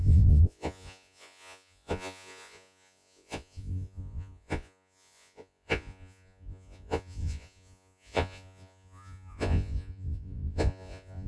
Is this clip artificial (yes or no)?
yes